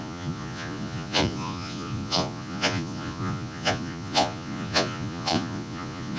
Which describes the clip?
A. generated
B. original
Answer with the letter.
A